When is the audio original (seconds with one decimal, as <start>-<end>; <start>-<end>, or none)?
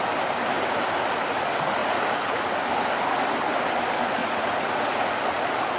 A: 0.0-1.8; 2.5-4.2; 5.2-5.8